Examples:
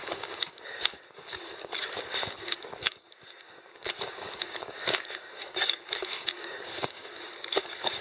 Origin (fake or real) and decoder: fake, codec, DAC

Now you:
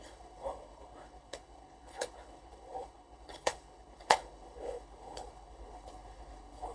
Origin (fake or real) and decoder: fake, codec, HILCodec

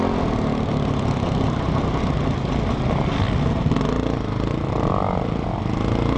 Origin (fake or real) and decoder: real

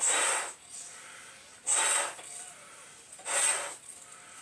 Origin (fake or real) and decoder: real